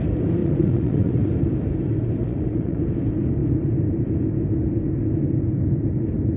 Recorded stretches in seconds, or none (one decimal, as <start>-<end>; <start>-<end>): 0.0-0.4; 1.3-2.2; 2.8-6.4